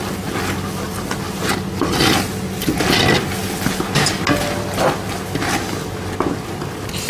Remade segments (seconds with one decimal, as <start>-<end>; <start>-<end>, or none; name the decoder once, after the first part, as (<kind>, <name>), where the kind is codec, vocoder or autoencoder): none